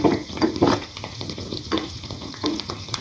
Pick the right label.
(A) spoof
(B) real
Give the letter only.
A